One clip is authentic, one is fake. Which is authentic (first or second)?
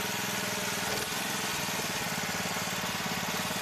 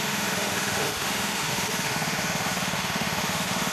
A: first